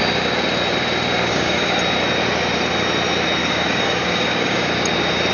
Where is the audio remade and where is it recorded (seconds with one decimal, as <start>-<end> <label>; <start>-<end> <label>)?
0.0-1.3 recorded; 1.3-1.8 remade; 1.8-3.4 recorded; 3.4-4.7 remade; 4.7-5.3 recorded